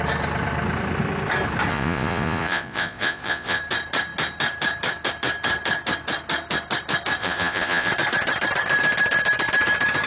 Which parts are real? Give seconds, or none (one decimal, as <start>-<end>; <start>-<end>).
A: 0.0-1.7; 3.6-7.2; 7.9-10.1